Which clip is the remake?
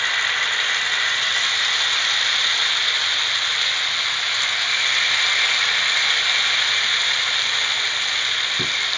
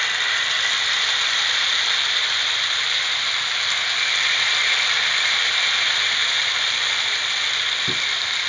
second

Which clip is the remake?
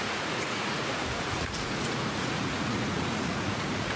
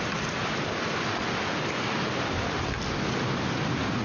first